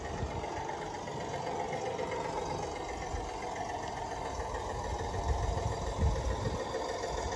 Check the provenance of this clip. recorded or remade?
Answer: recorded